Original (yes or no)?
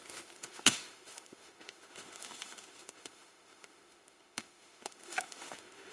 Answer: no